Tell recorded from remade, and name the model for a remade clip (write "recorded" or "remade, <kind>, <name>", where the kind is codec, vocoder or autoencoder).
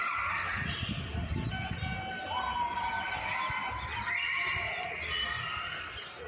recorded